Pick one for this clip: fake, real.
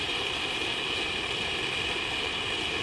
real